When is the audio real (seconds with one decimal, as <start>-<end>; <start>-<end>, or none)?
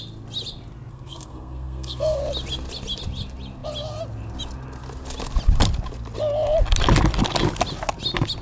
0.0-0.9; 2.2-8.4